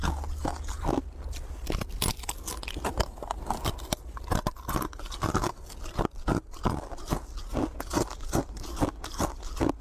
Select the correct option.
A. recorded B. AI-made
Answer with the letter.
A